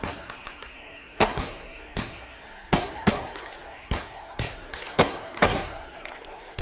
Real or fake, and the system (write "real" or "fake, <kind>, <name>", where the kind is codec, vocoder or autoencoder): fake, codec, SNAC